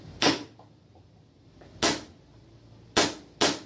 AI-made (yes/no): no